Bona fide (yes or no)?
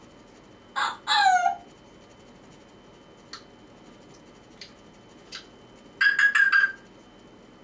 yes